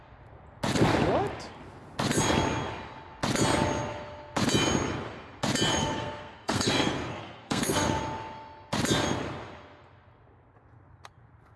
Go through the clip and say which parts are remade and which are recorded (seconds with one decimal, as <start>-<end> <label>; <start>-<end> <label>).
0.0-5.8 recorded; 5.8-8.0 remade; 8.0-11.6 recorded